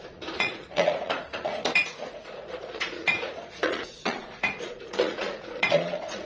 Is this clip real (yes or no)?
no